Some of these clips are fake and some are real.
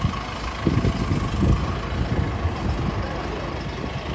real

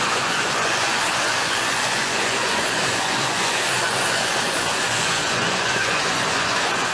fake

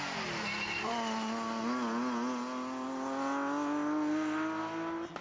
real